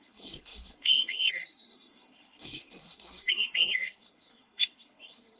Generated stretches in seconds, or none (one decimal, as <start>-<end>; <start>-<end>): 0.0-5.4